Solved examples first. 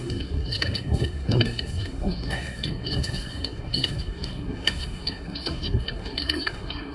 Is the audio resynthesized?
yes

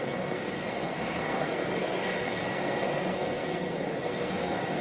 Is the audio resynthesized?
yes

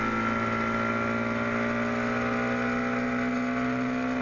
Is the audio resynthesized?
no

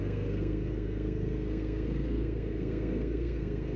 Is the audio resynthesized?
yes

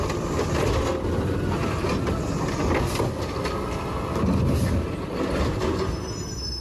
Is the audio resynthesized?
no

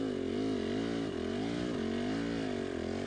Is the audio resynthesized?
no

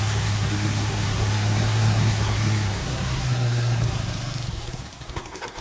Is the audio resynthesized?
yes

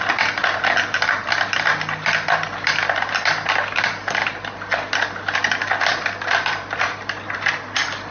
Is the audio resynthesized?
no